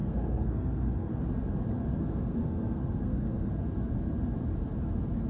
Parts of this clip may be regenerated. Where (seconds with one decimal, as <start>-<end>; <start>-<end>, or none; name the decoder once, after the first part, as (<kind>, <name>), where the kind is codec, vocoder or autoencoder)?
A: 0.0-1.1 (codec, SNAC); 1.9-3.5